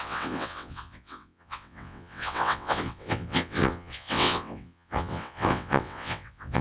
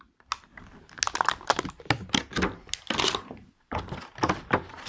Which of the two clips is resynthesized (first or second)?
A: first